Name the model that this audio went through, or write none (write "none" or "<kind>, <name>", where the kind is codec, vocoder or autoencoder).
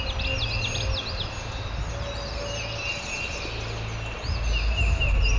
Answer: none